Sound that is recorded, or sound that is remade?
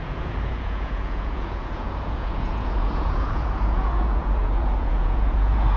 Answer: remade